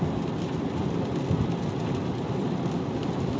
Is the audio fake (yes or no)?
no